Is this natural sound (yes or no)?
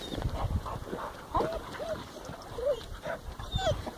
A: yes